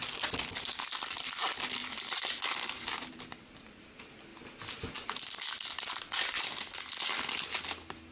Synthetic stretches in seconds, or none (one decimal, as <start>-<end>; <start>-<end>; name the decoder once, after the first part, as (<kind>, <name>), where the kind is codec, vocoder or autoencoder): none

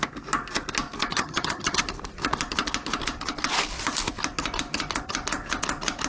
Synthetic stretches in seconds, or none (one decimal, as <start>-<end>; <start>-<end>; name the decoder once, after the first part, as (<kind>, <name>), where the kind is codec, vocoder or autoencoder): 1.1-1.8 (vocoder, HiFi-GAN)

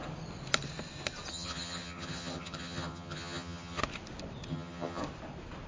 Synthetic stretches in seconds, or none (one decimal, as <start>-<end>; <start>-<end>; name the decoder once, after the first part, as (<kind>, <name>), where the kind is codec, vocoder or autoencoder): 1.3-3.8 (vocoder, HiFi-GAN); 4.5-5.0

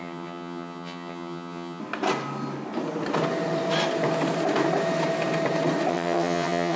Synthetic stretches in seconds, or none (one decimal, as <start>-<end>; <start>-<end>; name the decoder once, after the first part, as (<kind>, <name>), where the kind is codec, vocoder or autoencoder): 0.0-1.8 (vocoder, HiFi-GAN); 5.9-6.8

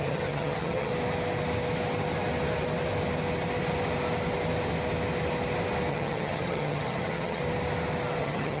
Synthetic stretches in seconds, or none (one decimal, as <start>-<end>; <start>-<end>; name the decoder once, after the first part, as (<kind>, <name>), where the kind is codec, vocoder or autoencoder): 0.0-0.9 (vocoder, HiFi-GAN); 5.9-7.4; 8.2-8.6